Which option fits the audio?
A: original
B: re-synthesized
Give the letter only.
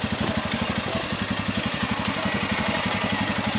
A